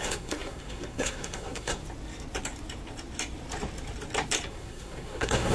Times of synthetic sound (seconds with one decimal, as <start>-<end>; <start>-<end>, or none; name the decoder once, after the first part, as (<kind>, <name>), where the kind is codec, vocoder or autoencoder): 0.0-1.8 (codec, SNAC); 4.5-5.5